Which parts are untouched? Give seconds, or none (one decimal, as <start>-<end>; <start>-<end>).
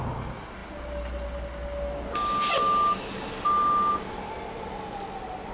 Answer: 0.0-5.5